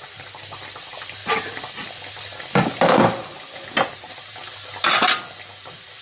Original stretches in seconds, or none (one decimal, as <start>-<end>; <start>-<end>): 0.0-6.0